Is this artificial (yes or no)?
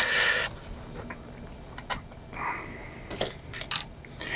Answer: no